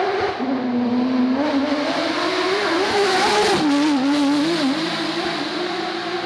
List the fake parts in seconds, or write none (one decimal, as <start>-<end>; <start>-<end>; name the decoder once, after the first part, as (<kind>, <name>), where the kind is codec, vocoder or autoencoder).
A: none